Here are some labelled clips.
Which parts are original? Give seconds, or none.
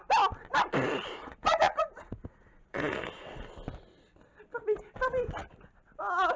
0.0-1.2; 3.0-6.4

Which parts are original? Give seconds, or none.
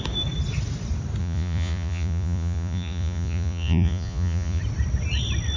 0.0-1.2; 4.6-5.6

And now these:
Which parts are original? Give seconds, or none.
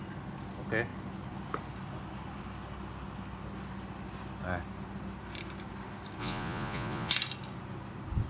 0.0-6.2; 7.1-8.3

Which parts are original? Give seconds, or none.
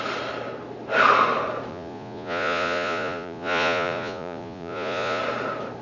0.0-1.7; 5.2-5.8